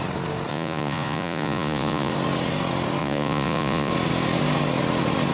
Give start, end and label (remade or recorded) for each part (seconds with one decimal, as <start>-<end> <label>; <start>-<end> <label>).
0.0-0.5 recorded; 0.5-2.1 remade; 2.1-3.0 recorded; 3.0-3.9 remade; 3.9-5.3 recorded